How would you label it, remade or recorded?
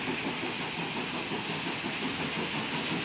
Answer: recorded